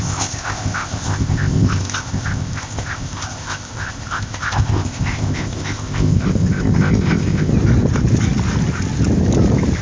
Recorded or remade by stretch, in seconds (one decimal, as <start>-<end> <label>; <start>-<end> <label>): 0.0-7.5 remade; 7.5-9.8 recorded